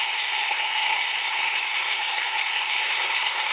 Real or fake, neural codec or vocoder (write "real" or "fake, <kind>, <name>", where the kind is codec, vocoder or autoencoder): fake, codec, SNAC